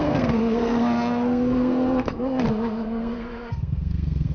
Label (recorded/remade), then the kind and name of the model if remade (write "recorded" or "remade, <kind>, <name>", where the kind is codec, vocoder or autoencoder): remade, codec, SNAC